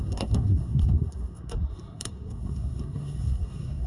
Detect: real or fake fake